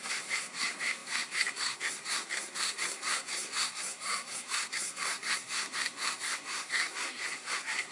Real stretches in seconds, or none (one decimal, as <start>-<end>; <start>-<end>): none